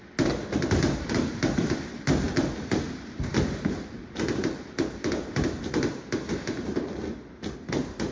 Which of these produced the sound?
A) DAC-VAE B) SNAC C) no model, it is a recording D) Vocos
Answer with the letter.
C